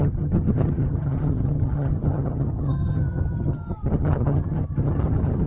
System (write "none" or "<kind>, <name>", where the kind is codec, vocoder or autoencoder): vocoder, HiFi-GAN